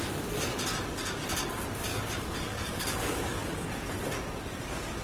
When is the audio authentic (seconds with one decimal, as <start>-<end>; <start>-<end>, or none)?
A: 0.0-1.9; 3.7-5.0